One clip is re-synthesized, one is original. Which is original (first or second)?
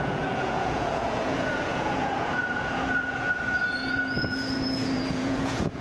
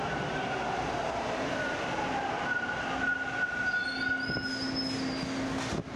second